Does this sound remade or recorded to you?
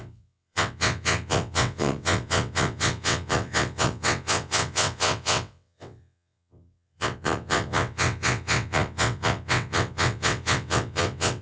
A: remade